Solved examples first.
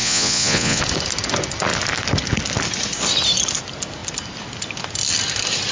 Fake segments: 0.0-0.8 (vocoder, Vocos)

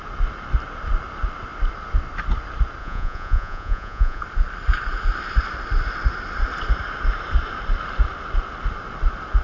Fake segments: 2.8-4.2 (vocoder, Vocos)

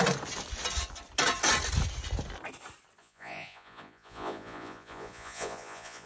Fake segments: 3.0-6.1 (vocoder, Vocos)

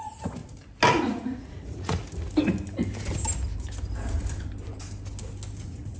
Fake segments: 0.0-0.4 (vocoder, Vocos); 1.0-2.0; 5.6-6.0

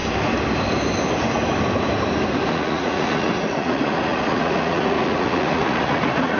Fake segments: 2.5-6.4 (vocoder, Vocos)